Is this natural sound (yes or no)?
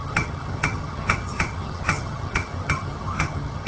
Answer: no